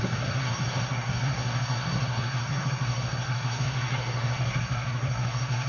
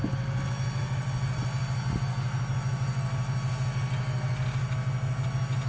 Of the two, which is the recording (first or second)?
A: second